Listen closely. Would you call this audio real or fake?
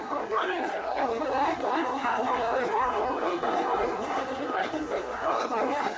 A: fake